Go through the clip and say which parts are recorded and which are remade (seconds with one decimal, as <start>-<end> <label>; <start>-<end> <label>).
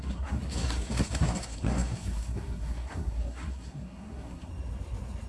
0.0-4.5 remade; 4.5-5.3 recorded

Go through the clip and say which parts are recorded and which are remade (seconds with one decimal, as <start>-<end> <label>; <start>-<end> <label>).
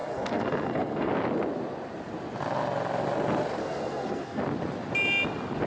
0.0-1.1 remade; 1.1-3.6 recorded; 3.6-4.4 remade; 4.4-5.7 recorded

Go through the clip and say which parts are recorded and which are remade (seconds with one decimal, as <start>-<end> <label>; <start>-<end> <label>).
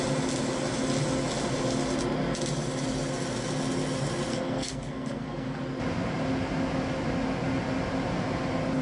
0.0-4.3 recorded; 4.3-5.6 remade; 5.6-8.8 recorded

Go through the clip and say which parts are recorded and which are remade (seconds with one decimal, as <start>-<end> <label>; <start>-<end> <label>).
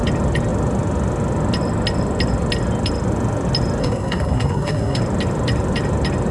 0.0-3.8 recorded; 3.8-5.0 remade; 5.0-6.3 recorded